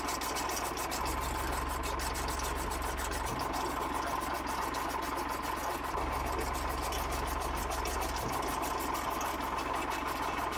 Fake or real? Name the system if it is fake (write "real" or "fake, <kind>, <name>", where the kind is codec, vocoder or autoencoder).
real